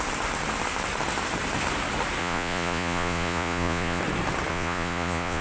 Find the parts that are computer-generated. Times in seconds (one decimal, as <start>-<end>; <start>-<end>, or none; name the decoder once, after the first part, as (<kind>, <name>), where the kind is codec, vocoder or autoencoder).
2.2-4.0 (vocoder, Vocos); 4.5-5.4